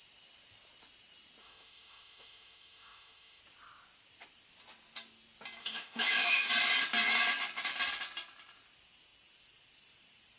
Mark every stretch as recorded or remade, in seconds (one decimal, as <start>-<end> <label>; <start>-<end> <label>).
0.0-1.4 recorded; 1.4-3.4 remade; 3.4-5.6 recorded; 5.6-6.5 remade; 6.5-10.4 recorded